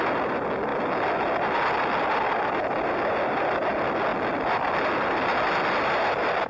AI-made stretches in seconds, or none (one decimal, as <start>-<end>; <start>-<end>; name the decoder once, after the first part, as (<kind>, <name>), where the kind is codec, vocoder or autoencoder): none